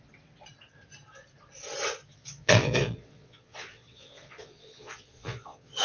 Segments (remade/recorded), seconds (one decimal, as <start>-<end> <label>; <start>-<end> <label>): 0.0-2.0 recorded; 2.0-5.8 remade

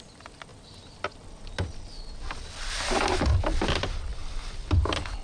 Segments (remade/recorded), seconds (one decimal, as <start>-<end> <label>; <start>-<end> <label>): 0.0-5.2 recorded